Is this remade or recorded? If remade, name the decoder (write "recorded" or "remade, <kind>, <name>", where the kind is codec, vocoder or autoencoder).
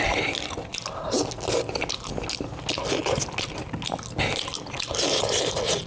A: recorded